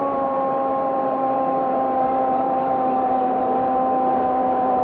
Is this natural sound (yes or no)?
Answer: no